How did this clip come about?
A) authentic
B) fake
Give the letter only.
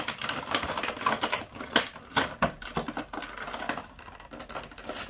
A